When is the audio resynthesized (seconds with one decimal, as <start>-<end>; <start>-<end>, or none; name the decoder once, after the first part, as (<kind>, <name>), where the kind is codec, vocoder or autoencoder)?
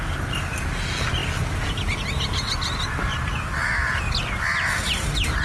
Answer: none